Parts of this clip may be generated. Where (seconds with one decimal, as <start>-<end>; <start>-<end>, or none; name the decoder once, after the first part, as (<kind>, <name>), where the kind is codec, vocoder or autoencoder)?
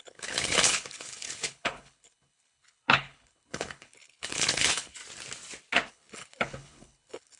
0.0-5.0 (codec, HILCodec); 5.9-7.4